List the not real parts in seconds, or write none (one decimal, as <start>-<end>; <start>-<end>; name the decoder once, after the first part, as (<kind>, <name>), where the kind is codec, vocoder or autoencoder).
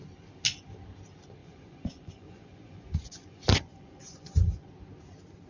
1.4-4.7 (vocoder, Vocos)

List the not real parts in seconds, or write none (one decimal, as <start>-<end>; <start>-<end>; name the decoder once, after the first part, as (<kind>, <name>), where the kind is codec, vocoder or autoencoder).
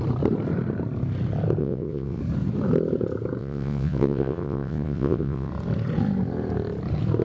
1.6-2.2 (vocoder, WaveNeXt); 3.4-5.5